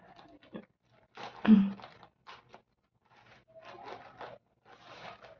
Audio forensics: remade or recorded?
recorded